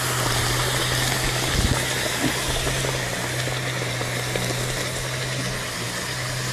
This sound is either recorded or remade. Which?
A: recorded